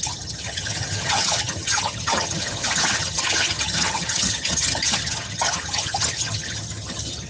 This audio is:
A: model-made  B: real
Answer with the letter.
A